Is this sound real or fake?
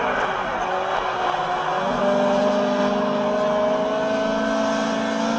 real